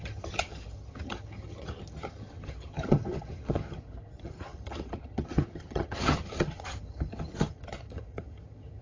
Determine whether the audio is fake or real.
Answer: fake